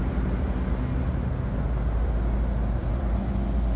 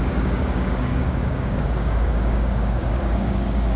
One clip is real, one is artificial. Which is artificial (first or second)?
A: second